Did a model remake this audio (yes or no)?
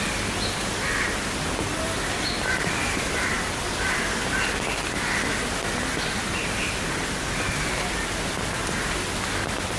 no